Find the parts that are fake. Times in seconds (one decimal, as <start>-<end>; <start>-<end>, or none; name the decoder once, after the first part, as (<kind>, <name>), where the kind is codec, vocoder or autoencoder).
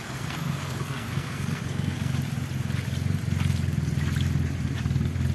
0.0-2.1 (codec, SNAC)